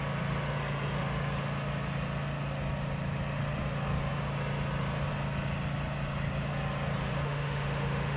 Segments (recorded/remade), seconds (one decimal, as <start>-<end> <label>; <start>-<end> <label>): 0.0-7.1 recorded; 7.1-8.2 remade